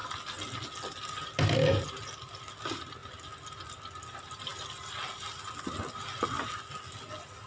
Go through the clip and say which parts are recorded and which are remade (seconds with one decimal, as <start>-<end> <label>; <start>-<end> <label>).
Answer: 0.0-7.5 recorded